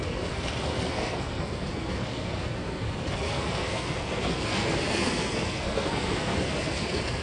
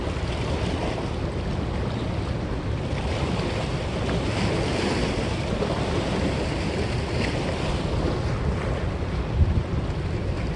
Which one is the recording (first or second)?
second